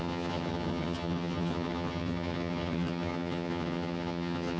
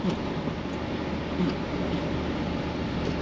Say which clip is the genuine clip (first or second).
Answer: second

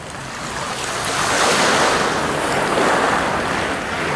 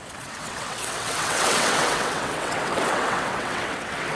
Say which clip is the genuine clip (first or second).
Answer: first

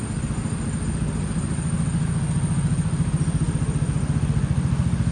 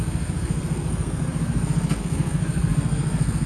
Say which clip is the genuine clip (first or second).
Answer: first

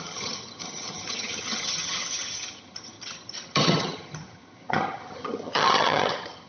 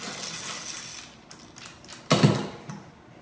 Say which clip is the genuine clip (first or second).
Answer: second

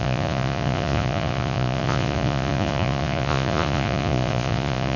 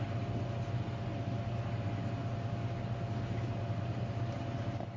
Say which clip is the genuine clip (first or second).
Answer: second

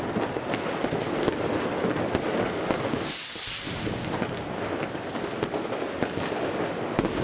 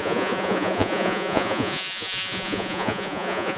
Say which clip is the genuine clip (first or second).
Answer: first